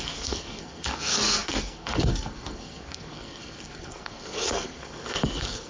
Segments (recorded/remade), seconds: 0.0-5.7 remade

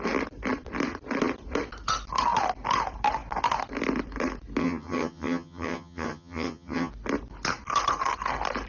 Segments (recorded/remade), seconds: 0.0-4.6 recorded; 4.6-6.9 remade; 6.9-8.7 recorded

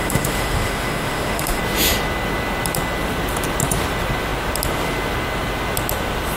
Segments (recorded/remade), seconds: 0.0-1.6 remade; 1.6-6.4 recorded

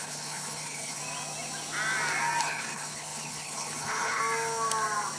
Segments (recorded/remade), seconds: 0.0-1.0 remade; 1.0-2.4 recorded; 2.4-4.2 remade; 4.2-5.2 recorded

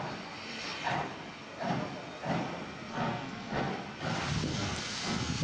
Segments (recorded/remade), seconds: 0.0-2.9 recorded; 2.9-3.7 remade; 3.7-4.5 recorded; 4.5-5.4 remade

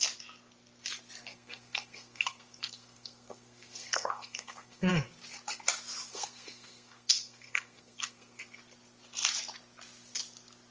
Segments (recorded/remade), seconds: 0.0-1.2 recorded; 1.2-4.9 remade; 4.9-6.1 recorded; 6.1-8.4 remade; 8.4-10.7 recorded